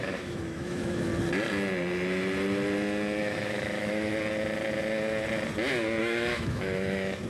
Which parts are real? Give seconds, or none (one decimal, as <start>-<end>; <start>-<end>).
1.1-3.2; 4.1-6.0